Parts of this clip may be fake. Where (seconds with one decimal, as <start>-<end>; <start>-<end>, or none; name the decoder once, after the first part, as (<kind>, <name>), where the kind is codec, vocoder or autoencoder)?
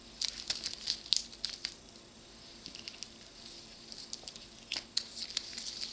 none